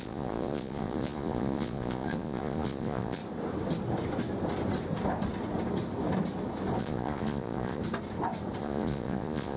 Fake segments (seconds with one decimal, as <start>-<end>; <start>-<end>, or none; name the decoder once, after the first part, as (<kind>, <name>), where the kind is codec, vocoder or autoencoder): 0.0-3.2 (vocoder, Vocos); 6.8-7.8; 8.6-9.6